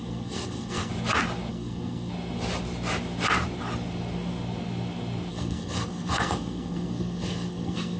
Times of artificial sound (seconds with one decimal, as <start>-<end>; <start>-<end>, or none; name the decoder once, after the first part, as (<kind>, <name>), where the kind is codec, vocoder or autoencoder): 0.0-0.9 (codec, SNAC); 1.5-2.1; 5.3-8.0

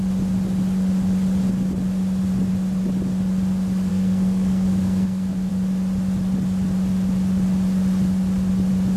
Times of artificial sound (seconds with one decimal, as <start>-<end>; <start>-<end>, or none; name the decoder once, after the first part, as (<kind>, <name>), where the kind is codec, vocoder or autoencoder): 3.9-5.5 (codec, SNAC)